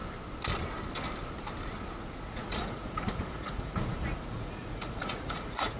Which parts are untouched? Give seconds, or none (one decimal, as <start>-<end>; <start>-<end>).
0.0-2.0